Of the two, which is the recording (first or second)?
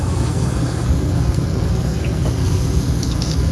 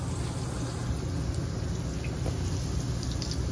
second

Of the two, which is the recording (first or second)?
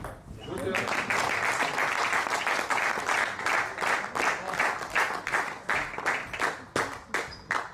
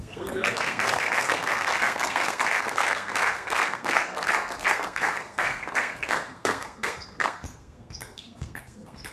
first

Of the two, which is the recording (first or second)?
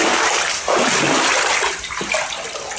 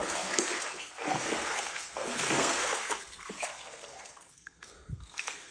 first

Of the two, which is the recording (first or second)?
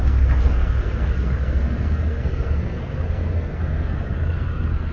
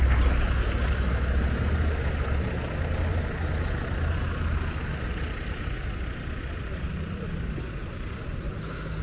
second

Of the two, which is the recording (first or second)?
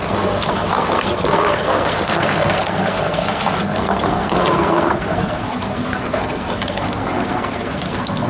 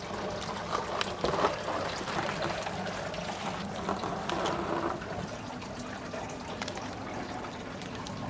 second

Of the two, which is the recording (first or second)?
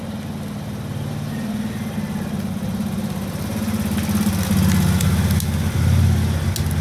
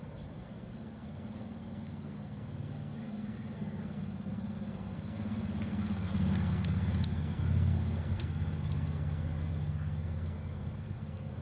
first